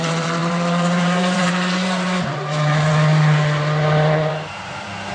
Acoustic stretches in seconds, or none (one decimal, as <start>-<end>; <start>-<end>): 2.9-4.3